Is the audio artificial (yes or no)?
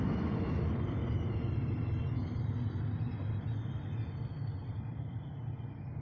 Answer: no